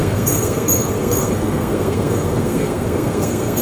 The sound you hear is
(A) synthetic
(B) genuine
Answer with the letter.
A